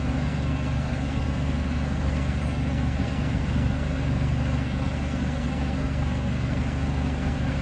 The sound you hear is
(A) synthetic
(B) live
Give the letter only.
A